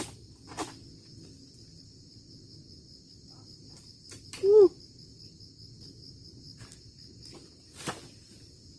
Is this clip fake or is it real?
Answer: real